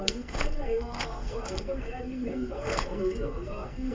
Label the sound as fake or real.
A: fake